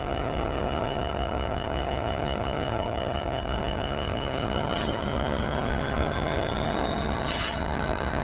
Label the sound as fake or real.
fake